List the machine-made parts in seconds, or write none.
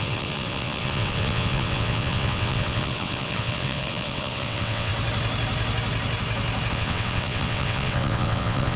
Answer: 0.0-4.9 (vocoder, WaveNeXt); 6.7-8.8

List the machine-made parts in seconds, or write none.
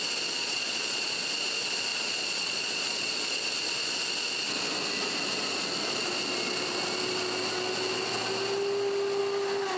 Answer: 0.4-1.2 (vocoder, Vocos); 1.9-3.5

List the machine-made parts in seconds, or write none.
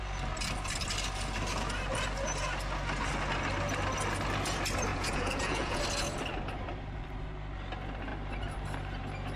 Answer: 4.9-5.8 (vocoder, Vocos)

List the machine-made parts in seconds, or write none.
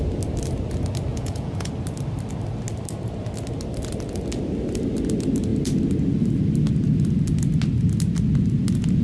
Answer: 1.1-1.7 (vocoder, Vocos)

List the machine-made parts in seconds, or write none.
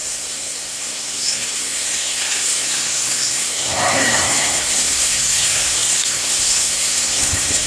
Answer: 0.0-7.7 (codec, SNAC)